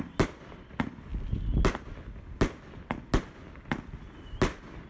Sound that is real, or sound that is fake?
real